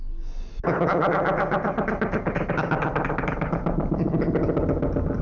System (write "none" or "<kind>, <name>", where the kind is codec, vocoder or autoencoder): none